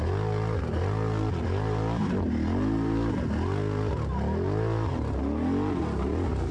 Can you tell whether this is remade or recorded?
recorded